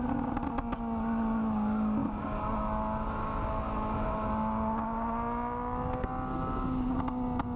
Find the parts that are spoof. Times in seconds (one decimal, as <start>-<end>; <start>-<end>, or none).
none